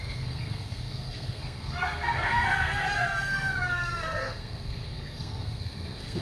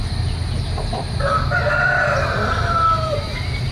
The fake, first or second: first